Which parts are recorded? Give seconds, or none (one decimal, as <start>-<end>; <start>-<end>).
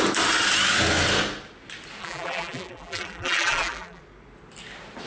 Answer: 0.0-2.0; 4.0-5.1